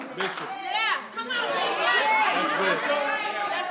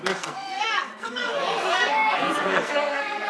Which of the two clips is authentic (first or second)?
first